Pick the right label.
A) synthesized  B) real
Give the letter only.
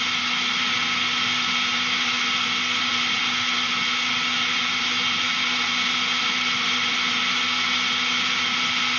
B